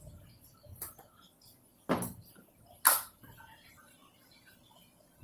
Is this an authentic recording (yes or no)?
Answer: no